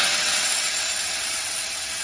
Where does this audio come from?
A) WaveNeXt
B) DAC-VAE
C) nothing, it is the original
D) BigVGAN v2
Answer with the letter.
A